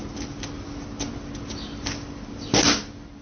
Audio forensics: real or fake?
real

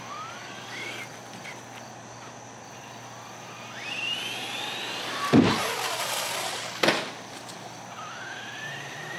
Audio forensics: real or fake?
real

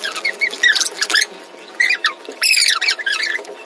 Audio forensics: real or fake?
fake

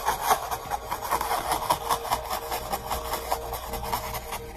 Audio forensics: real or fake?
real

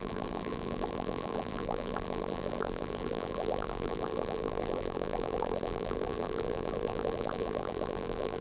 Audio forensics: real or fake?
fake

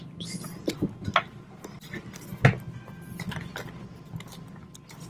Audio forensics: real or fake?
real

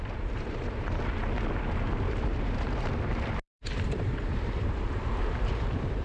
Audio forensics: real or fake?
fake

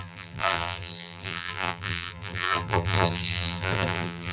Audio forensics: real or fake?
fake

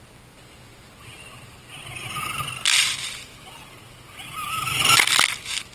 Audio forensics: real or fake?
real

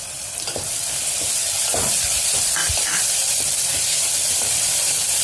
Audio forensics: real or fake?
fake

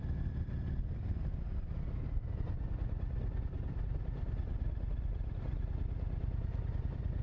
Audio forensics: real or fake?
fake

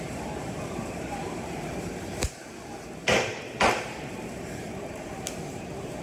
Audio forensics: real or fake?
fake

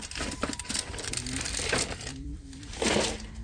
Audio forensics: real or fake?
fake